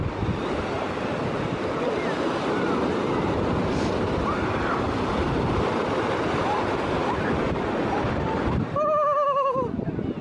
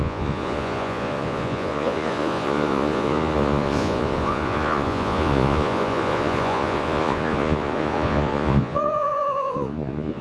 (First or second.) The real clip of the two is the first